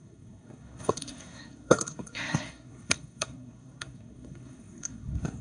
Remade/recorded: remade